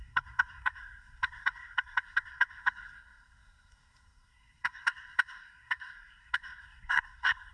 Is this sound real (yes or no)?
no